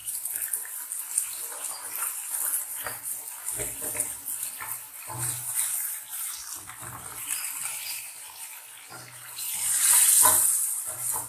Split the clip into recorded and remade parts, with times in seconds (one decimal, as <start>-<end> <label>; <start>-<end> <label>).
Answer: 0.0-11.3 recorded